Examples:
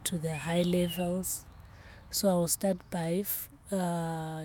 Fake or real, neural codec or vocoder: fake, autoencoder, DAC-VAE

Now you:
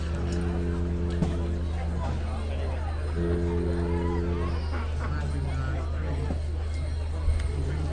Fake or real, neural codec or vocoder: real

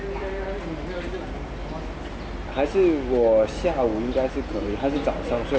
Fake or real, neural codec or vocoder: real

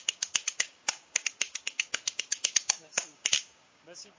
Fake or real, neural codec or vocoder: fake, codec, DAC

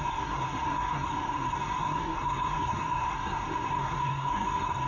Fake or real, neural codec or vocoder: fake, codec, SNAC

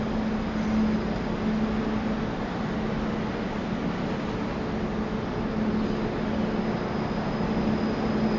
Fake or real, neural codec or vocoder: real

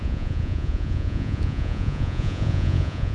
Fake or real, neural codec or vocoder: fake, vocoder, Vocos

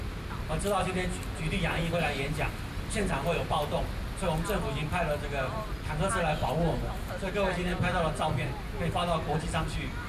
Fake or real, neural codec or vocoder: real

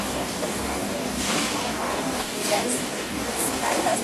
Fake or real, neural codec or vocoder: fake, codec, DAC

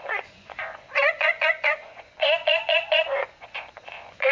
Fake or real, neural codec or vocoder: fake, vocoder, Vocos